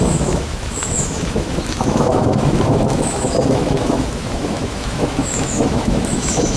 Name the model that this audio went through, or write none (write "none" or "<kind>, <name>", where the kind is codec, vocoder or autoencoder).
autoencoder, DAC-VAE